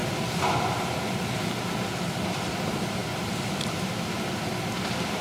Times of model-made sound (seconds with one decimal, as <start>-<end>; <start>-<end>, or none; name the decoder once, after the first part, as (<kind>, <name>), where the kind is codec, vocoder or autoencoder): none